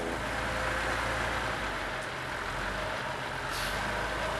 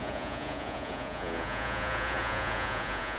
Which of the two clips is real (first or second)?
first